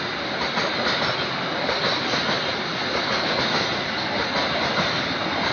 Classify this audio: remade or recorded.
recorded